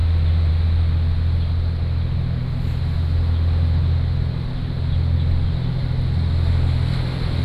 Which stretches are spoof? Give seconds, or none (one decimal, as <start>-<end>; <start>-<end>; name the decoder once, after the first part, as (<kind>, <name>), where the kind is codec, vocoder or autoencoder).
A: none